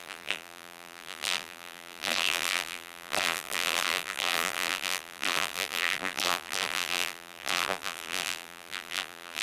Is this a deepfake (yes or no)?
yes